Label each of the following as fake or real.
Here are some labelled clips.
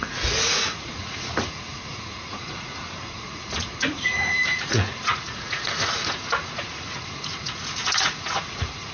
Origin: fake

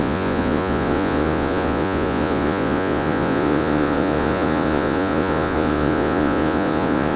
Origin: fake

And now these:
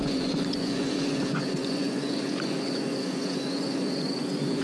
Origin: fake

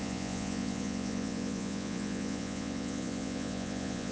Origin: fake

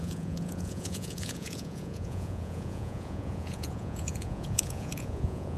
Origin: fake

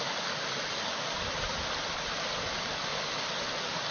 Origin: real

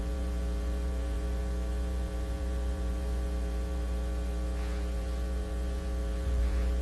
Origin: fake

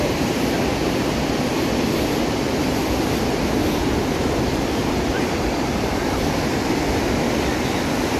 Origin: real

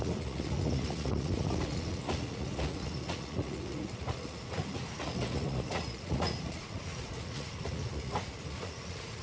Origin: fake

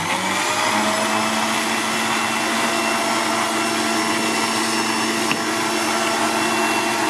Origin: real